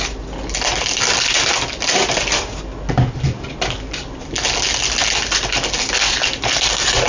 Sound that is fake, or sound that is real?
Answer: real